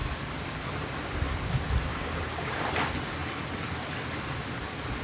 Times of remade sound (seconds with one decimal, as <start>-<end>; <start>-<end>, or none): 1.9-2.6